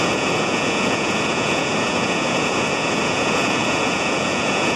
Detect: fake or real fake